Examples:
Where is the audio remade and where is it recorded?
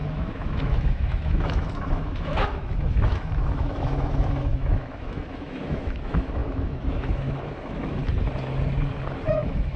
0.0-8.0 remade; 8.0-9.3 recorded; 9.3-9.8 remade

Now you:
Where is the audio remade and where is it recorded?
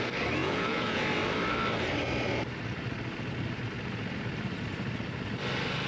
0.0-0.4 recorded; 0.4-1.0 remade; 1.0-5.9 recorded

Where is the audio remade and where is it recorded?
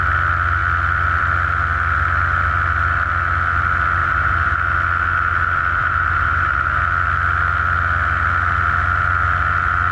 0.0-4.0 recorded; 4.0-4.5 remade; 4.5-5.8 recorded; 5.8-6.8 remade; 6.8-9.9 recorded